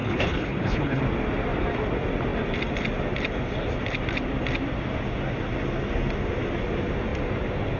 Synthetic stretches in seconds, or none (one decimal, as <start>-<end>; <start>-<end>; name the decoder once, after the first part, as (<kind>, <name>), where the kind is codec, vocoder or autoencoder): 0.0-1.0 (codec, HILCodec)